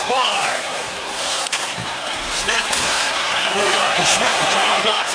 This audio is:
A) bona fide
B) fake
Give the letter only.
B